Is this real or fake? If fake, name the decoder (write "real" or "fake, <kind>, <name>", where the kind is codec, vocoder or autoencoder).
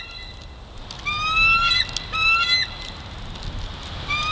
real